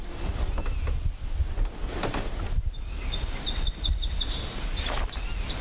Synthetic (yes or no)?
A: no